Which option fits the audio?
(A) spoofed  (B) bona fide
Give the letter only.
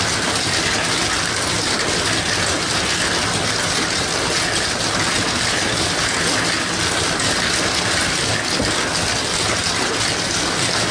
B